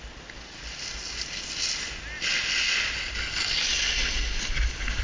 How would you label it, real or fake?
real